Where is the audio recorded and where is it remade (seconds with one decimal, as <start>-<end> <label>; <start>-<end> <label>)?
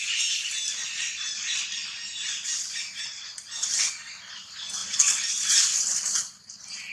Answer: 0.0-6.9 recorded